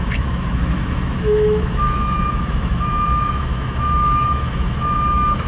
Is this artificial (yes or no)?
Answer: yes